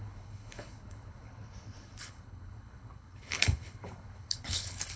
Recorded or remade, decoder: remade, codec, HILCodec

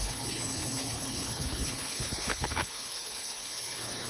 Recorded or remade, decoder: remade, codec, HILCodec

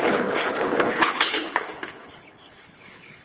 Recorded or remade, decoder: remade, codec, HILCodec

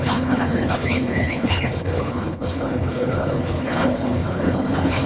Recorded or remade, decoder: remade, codec, HILCodec